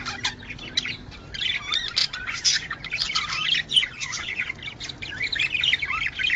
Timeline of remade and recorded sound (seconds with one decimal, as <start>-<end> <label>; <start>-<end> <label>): 0.0-2.0 recorded; 2.0-2.8 remade; 2.8-3.7 recorded; 3.7-4.5 remade; 4.5-6.4 recorded